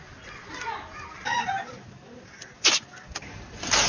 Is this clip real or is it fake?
real